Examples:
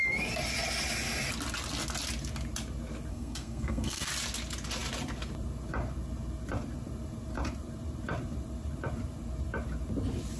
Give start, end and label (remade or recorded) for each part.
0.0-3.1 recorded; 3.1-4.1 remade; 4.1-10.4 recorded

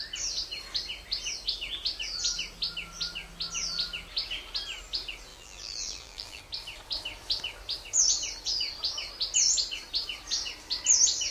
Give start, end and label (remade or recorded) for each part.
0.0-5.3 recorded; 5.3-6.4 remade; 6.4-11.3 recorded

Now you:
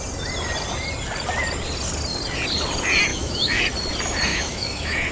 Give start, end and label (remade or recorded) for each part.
0.0-3.1 recorded; 3.1-3.6 remade; 3.6-4.3 recorded; 4.3-5.1 remade

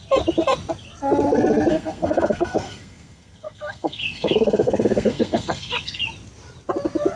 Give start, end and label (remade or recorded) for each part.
0.0-1.7 recorded; 1.7-6.0 remade; 6.0-7.2 recorded

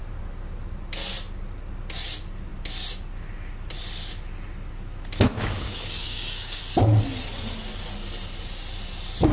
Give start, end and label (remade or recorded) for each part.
0.0-5.3 recorded; 5.3-6.6 remade; 6.6-9.3 recorded

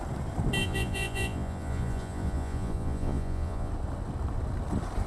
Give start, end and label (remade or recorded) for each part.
0.0-0.6 recorded; 0.6-3.7 remade; 3.7-5.1 recorded